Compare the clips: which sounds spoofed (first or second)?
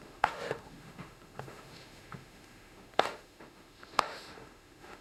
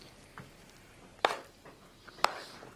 first